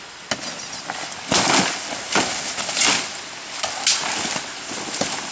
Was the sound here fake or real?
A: real